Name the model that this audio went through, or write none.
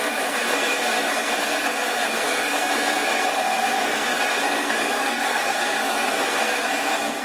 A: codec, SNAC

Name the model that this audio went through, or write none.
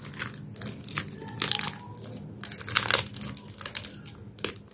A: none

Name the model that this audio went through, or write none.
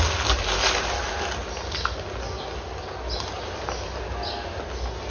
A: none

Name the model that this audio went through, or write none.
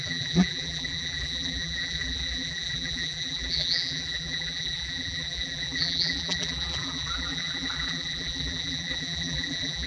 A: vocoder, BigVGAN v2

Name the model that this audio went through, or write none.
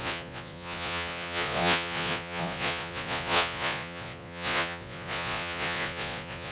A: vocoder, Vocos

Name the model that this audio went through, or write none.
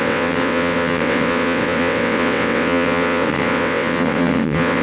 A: vocoder, WaveNeXt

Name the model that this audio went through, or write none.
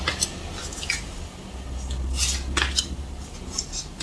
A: none